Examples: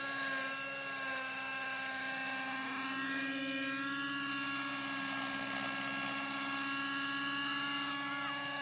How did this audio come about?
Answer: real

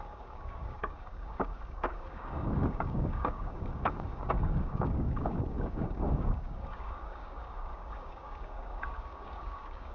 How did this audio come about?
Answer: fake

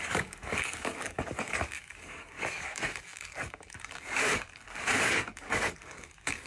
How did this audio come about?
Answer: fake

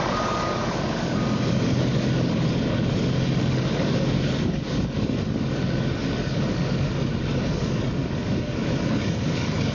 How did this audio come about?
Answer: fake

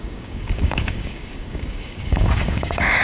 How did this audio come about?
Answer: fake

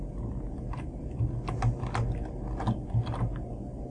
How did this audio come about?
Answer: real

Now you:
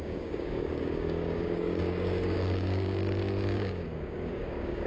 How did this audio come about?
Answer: fake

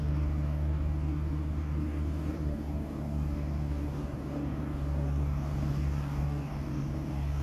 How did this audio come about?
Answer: fake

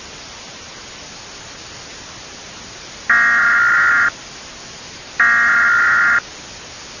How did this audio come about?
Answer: real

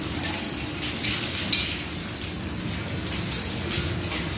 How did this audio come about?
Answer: real